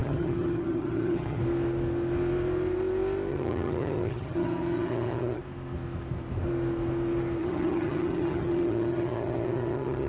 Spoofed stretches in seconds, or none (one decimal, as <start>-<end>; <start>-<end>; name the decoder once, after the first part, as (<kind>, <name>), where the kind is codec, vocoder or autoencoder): 0.0-1.4 (vocoder, HiFi-GAN); 3.3-5.4; 7.4-10.1